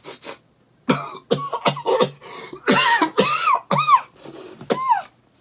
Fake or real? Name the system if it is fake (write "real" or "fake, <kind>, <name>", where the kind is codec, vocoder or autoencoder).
real